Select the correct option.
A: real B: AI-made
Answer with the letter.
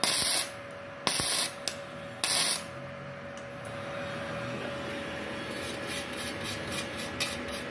A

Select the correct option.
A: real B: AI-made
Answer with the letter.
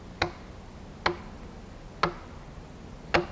A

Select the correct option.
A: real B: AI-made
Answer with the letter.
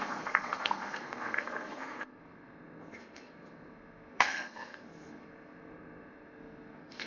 B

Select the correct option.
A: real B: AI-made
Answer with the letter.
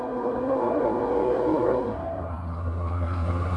B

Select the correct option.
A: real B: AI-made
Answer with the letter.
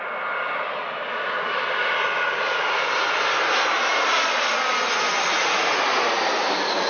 A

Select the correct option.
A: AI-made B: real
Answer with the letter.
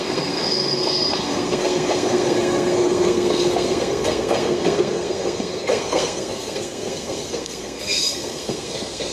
A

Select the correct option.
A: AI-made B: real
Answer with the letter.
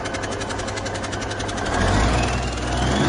B